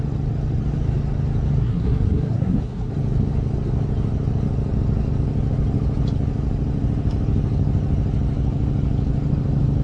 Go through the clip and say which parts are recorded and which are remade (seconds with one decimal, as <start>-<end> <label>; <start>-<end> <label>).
0.0-1.6 recorded; 1.6-2.9 remade; 2.9-9.8 recorded